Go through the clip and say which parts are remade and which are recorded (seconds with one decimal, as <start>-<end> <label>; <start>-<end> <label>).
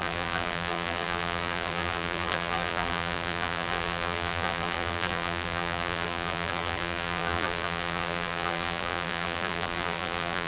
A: 0.0-10.5 remade